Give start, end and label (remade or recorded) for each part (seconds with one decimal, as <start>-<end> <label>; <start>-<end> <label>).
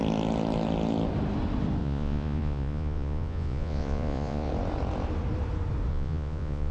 0.0-1.8 recorded; 1.8-4.5 remade; 4.5-5.9 recorded; 5.9-6.7 remade